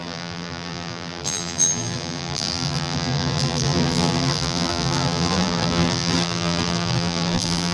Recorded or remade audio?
remade